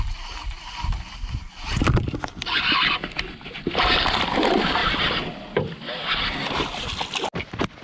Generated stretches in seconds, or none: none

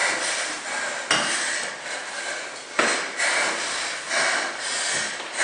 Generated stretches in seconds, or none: none

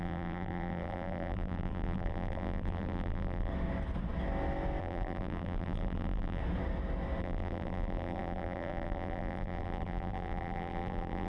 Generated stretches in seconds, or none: 0.0-3.5 (vocoder, BigVGAN v2); 4.8-6.4; 7.2-11.3

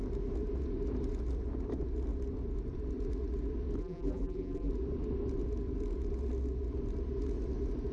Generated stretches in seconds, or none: 3.8-4.7 (vocoder, BigVGAN v2)

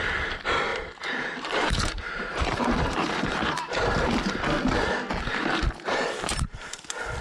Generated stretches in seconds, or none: 0.7-4.1 (vocoder, BigVGAN v2); 5.3-6.8

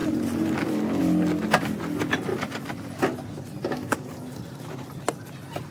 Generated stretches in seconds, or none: 0.0-1.0 (vocoder, BigVGAN v2)